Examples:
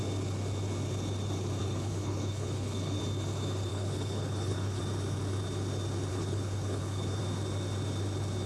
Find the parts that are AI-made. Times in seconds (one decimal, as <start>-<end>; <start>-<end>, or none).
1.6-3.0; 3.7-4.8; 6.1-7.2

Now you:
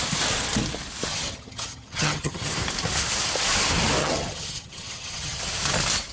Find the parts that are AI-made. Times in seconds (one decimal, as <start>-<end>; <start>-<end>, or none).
1.1-2.5; 4.0-5.4

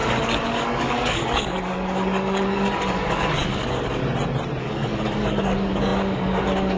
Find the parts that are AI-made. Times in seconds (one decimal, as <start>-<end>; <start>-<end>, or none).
0.0-4.0; 4.6-6.8

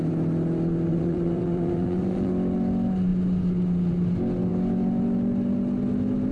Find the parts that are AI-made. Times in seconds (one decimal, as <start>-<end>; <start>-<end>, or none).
0.9-2.3

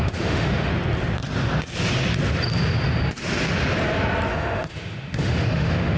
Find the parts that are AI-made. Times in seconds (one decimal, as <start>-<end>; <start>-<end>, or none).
0.0-0.7; 4.3-6.0